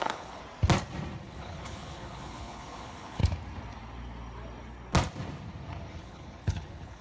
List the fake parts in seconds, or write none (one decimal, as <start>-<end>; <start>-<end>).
0.0-0.4; 1.2-3.2; 5.9-7.0